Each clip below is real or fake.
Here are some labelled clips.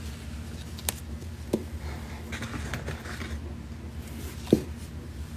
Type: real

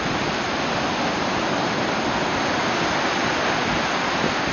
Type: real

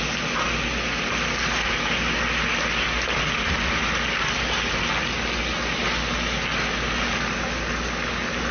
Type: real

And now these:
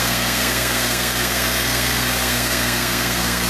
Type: fake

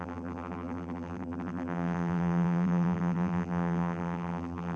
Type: fake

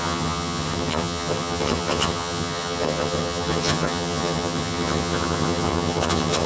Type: fake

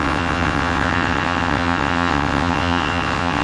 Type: fake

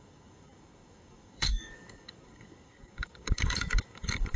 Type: fake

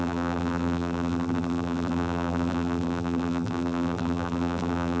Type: fake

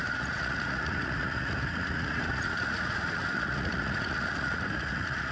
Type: fake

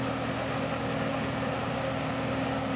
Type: real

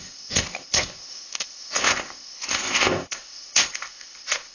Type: fake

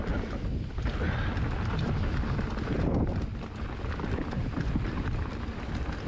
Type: real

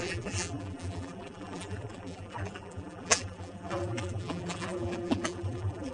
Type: fake